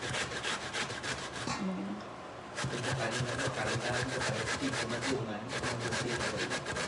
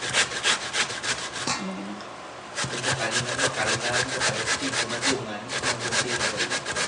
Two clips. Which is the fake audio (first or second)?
first